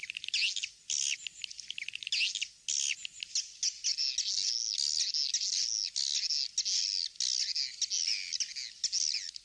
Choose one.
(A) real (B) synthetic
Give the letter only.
A